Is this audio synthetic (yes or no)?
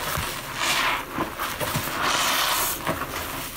no